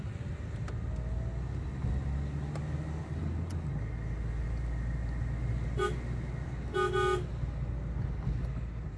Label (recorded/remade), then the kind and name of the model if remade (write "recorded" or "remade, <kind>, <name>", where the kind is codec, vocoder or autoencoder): recorded